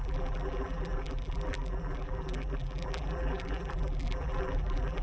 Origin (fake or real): fake